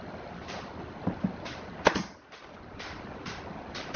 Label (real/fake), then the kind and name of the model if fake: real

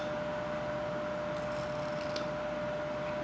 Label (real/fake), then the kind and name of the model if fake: real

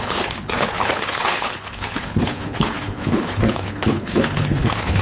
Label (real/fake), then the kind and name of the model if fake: fake, codec, HILCodec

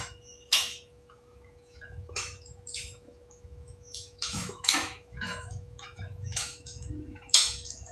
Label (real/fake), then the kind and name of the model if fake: fake, autoencoder, DAC-VAE